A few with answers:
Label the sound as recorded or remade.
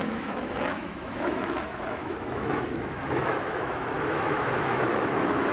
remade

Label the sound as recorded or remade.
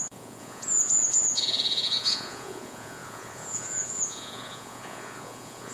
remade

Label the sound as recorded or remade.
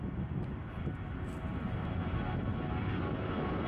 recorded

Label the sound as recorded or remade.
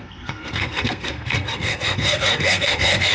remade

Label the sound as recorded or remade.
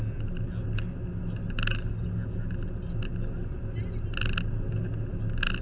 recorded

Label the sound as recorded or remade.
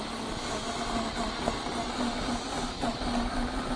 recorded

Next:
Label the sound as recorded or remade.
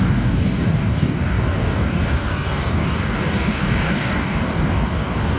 remade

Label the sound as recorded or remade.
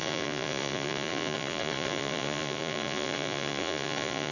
remade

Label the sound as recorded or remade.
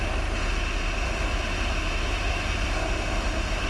recorded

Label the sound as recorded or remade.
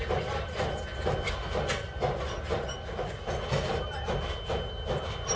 recorded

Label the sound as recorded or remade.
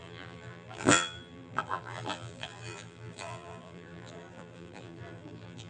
remade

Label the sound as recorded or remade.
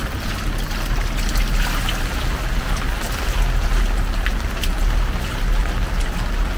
recorded